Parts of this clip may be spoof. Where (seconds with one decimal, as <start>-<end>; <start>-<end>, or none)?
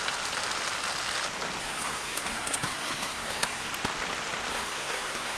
1.6-3.7; 4.5-5.4